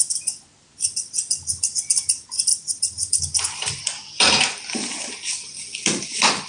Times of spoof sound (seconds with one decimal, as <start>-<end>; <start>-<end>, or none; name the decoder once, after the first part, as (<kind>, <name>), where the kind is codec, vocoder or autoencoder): 2.5-3.2 (vocoder, BigVGAN v2)